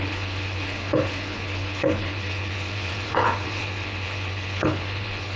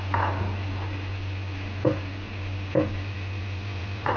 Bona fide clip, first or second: second